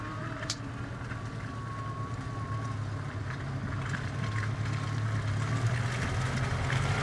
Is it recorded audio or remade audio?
recorded